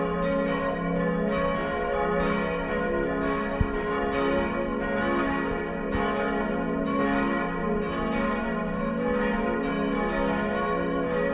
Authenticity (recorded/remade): recorded